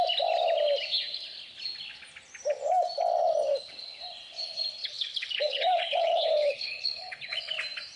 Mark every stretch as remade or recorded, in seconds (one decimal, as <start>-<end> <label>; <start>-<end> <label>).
0.0-4.8 recorded; 4.8-7.5 remade; 7.5-8.0 recorded